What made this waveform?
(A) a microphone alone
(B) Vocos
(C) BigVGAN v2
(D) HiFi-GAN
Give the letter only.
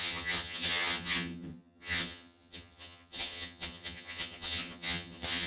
D